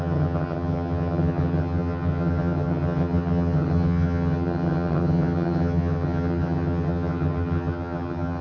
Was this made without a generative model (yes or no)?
no